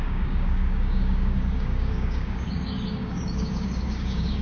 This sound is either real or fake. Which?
fake